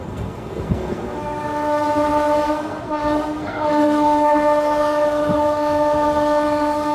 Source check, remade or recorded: remade